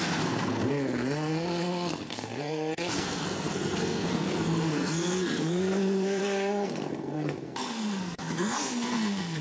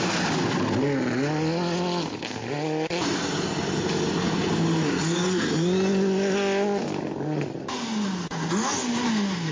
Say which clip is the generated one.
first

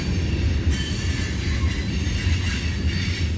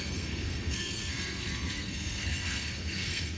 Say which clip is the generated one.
second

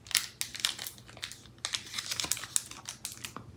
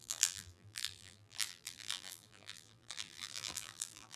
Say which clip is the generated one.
second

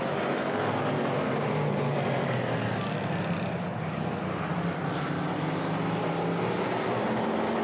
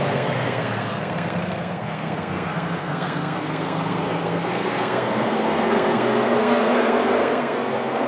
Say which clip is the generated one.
second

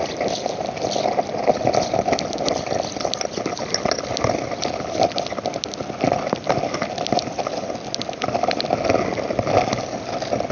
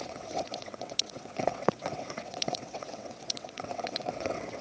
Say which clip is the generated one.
second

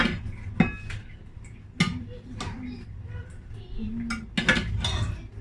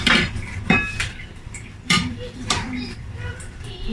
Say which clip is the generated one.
second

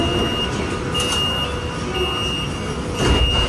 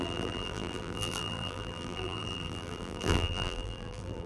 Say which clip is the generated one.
second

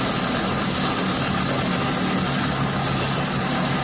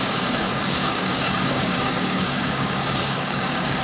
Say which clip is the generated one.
second